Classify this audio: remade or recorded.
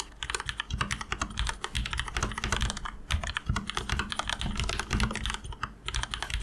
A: recorded